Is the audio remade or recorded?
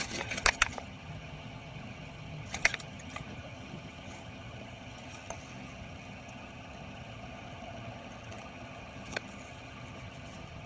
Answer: remade